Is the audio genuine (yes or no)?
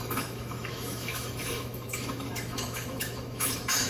no